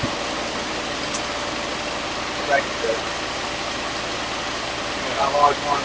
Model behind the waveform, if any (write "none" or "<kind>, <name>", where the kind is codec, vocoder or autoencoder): none